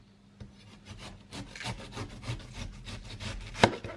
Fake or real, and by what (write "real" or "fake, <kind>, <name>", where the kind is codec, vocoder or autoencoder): real